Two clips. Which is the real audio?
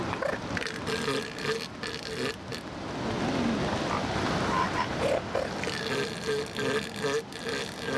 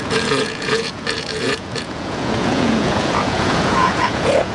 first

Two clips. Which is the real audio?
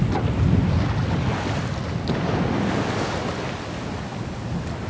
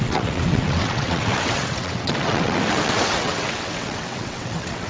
first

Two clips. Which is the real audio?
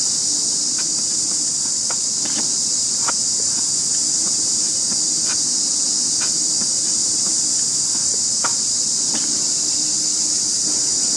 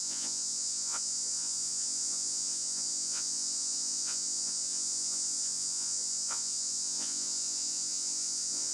first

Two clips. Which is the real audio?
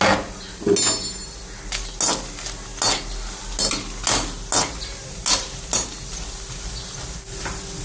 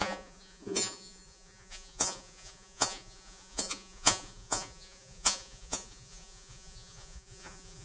first